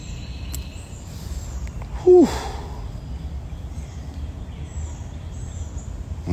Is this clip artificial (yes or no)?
no